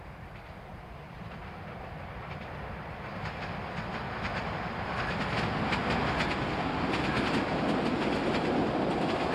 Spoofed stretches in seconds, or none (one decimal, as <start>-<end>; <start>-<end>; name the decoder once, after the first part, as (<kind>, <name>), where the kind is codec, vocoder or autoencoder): 0.7-2.5 (vocoder, BigVGAN v2); 4.3-4.9